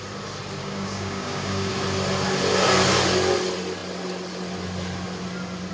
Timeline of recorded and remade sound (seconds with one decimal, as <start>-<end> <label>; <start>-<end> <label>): 0.0-0.6 recorded; 0.6-1.7 remade; 1.7-5.7 recorded